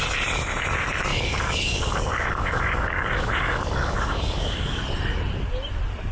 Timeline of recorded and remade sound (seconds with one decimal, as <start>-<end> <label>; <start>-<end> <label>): 0.0-1.1 recorded; 1.1-4.8 remade; 4.8-6.1 recorded